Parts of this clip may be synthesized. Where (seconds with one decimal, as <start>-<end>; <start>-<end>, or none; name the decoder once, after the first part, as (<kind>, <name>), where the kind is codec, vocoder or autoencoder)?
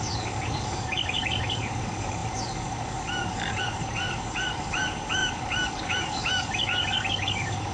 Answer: 0.0-7.7 (codec, DAC)